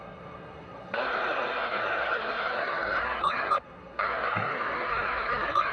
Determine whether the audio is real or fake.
fake